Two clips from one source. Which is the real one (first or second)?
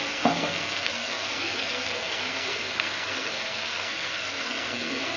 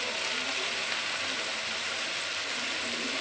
second